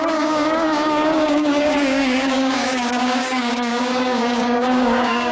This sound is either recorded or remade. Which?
remade